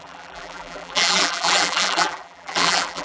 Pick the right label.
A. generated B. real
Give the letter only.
A